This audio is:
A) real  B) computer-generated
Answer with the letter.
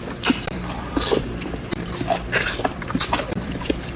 B